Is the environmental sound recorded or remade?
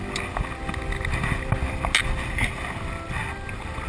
recorded